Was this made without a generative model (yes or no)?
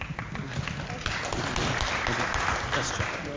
yes